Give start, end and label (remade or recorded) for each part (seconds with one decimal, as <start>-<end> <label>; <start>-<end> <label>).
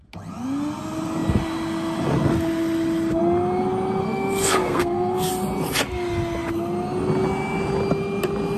0.0-4.0 recorded; 4.0-5.3 remade; 5.3-8.6 recorded